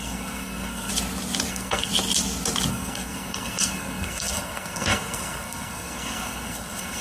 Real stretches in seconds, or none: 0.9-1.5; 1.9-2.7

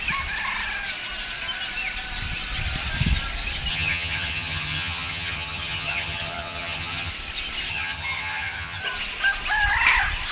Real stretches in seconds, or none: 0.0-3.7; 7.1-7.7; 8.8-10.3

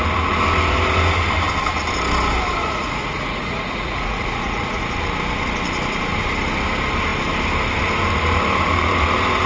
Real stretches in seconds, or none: 0.0-2.6; 4.8-9.5

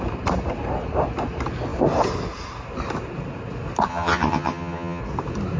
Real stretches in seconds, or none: 0.0-3.9; 5.0-5.6